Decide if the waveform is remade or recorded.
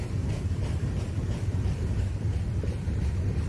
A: remade